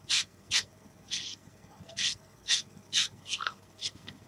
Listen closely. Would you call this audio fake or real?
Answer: fake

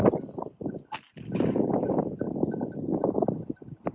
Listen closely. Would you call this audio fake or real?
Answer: real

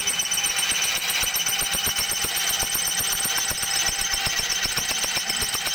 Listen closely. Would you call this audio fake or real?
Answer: real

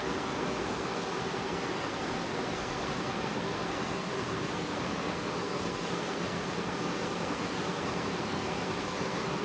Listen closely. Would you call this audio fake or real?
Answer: fake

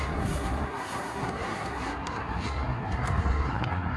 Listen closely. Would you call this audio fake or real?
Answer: fake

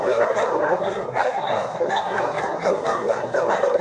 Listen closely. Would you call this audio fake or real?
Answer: fake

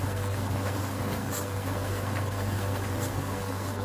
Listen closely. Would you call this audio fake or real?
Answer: fake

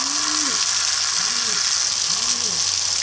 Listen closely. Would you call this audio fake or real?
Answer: real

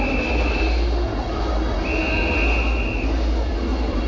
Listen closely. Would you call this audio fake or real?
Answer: real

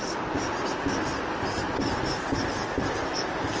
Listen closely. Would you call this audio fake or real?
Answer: real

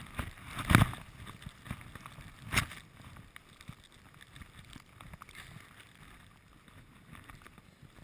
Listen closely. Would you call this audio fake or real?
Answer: real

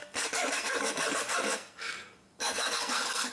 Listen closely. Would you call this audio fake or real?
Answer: fake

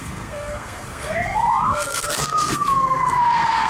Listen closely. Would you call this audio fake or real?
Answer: fake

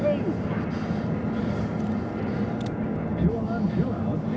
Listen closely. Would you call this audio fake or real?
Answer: real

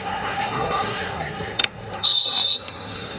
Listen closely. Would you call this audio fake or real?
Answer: fake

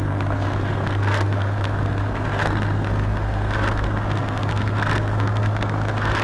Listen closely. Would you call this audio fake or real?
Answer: fake